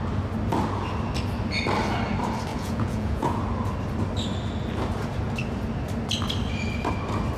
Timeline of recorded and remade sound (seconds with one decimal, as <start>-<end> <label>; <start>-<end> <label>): 0.0-2.5 recorded; 2.5-3.4 remade; 3.4-7.4 recorded